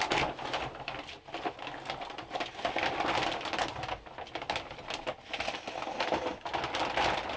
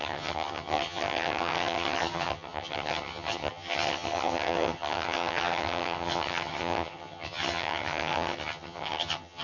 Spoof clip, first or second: second